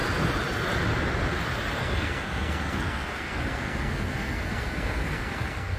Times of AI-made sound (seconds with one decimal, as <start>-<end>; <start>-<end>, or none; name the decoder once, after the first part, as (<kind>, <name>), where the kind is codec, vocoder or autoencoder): 1.8-5.8 (codec, SNAC)